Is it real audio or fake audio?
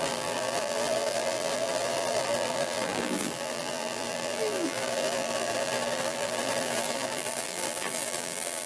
fake